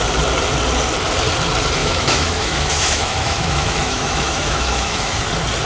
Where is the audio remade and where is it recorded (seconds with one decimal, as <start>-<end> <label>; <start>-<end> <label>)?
0.0-1.8 recorded; 1.8-5.2 remade; 5.2-5.7 recorded